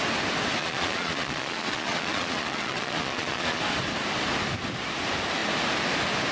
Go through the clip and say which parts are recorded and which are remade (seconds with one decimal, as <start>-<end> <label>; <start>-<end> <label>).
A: 0.0-0.6 recorded; 0.6-3.6 remade; 3.6-6.3 recorded